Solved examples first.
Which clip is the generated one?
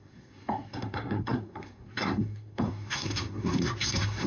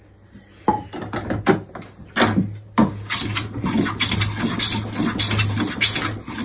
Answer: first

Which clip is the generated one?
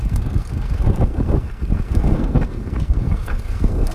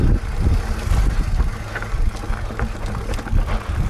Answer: first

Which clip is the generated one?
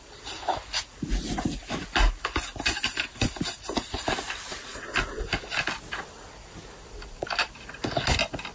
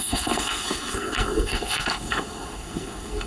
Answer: second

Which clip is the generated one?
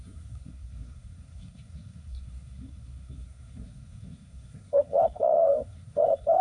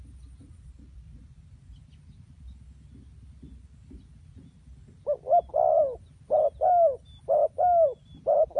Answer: first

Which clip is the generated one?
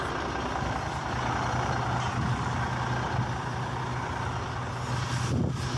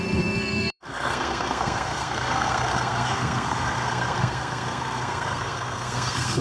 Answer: second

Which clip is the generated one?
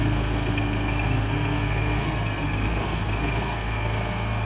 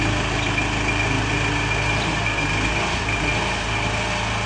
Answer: first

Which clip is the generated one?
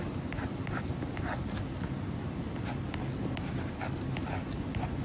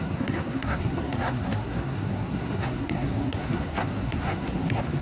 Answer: second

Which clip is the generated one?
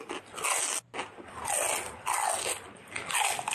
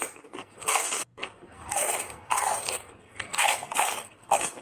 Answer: second